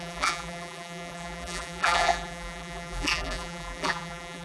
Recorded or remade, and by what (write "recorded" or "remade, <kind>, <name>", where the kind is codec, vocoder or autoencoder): remade, vocoder, BigVGAN v2